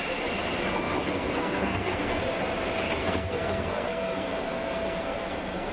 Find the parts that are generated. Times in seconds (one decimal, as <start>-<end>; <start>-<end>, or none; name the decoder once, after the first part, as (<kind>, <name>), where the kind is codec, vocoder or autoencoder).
1.0-2.2 (codec, SNAC); 3.0-5.7